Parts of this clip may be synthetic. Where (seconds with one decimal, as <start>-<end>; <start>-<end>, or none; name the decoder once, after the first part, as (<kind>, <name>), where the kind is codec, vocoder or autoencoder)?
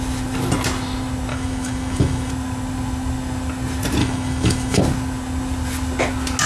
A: 1.3-2.3 (autoencoder, DAC-VAE); 4.0-4.8